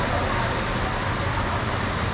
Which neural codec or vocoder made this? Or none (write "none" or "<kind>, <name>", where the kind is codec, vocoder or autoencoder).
none